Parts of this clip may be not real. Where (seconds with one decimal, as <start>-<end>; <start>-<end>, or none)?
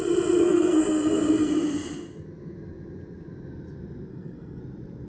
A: 0.4-1.5; 4.1-4.6